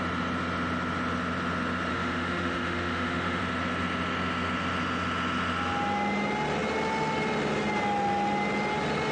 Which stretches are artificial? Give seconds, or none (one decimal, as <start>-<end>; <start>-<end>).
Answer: 1.9-3.4